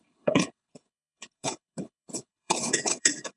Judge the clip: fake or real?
fake